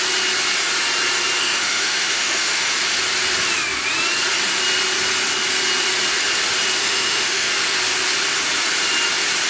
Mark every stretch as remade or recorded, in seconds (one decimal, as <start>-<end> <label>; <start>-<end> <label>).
0.0-1.4 recorded; 1.4-2.7 remade; 2.7-6.8 recorded; 6.8-7.5 remade; 7.5-9.5 recorded